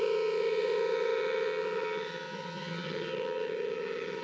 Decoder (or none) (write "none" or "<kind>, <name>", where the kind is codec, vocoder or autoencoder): vocoder, HiFi-GAN